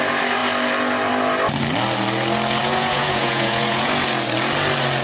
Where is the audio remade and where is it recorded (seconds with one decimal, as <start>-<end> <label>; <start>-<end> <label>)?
0.0-2.6 recorded; 2.6-3.9 remade; 3.9-5.0 recorded